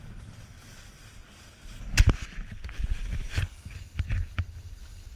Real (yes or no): yes